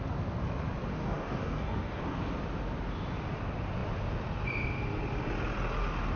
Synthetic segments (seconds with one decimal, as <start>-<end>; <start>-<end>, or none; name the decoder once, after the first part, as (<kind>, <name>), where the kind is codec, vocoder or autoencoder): 0.9-2.0 (codec, DAC)